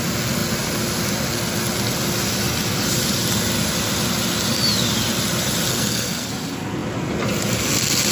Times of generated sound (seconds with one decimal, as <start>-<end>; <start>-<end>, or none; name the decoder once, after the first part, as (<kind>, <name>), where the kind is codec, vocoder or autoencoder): 5.7-6.3 (codec, SNAC)